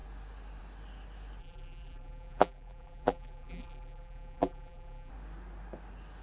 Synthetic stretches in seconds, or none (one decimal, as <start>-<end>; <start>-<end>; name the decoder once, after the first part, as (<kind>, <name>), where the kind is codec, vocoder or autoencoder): 1.4-5.1 (vocoder, BigVGAN v2)